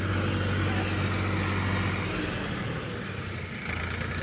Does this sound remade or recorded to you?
recorded